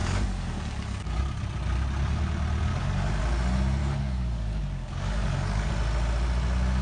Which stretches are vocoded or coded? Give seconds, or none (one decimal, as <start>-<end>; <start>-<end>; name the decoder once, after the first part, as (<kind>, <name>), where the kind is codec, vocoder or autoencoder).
0.0-1.2 (codec, DAC); 2.7-3.2; 3.8-5.7